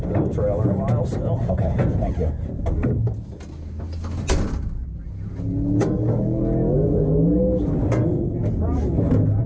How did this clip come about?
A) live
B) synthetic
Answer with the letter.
A